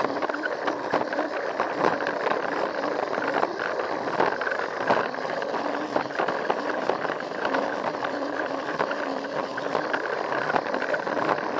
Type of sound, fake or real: fake